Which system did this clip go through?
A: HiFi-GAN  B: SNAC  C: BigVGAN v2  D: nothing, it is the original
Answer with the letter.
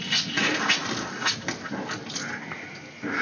D